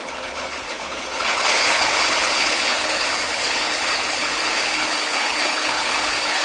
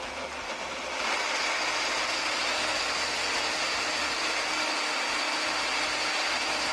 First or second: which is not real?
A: first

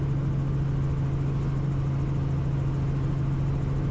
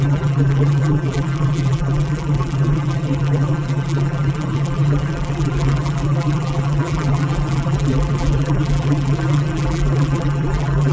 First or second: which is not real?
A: second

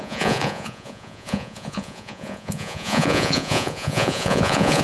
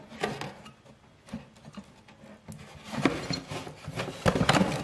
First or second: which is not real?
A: first